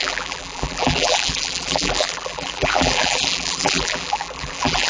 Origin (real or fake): fake